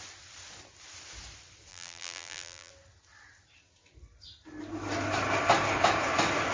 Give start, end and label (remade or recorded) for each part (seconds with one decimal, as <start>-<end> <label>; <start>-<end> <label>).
0.0-1.7 recorded; 1.7-2.7 remade; 2.7-6.5 recorded

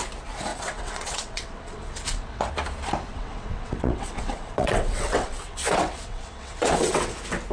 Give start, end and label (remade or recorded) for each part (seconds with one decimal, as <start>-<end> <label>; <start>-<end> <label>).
0.0-0.5 recorded; 0.5-2.5 remade; 2.5-3.1 recorded; 3.1-7.1 remade; 7.1-7.5 recorded

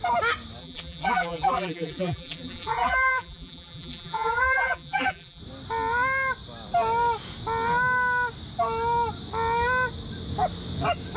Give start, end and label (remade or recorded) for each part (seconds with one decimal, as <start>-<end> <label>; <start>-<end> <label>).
0.0-0.6 recorded; 0.6-5.4 remade; 5.4-11.2 recorded

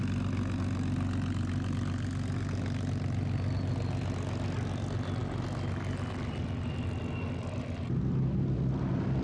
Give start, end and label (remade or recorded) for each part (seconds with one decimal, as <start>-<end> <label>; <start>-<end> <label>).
0.0-9.2 recorded

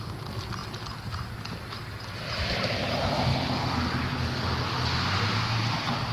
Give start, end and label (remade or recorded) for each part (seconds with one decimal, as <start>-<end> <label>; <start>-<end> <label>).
0.0-6.1 recorded